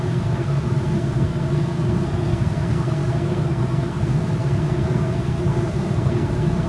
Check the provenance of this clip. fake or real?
fake